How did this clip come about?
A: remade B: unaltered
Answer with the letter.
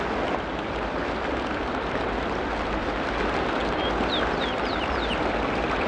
B